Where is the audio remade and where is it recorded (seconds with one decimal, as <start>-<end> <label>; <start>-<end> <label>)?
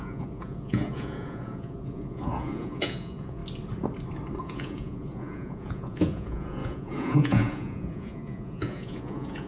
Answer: 0.0-3.4 remade; 3.4-4.4 recorded; 4.4-9.5 remade